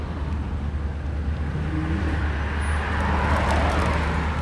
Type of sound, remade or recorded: recorded